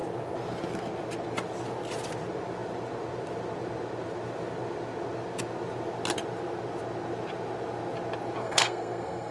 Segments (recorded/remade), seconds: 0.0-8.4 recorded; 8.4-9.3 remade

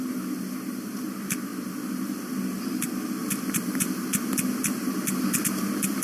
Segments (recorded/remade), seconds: 0.0-3.2 recorded; 3.2-3.9 remade; 3.9-6.0 recorded

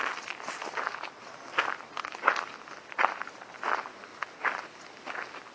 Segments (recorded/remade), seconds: 0.0-4.1 recorded; 4.1-4.7 remade; 4.7-5.5 recorded

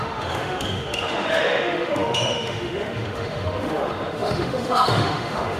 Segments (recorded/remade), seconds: 0.0-5.6 remade

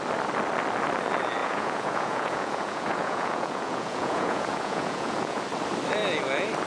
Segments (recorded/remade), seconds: 0.0-1.4 recorded; 1.4-5.4 remade; 5.4-6.7 recorded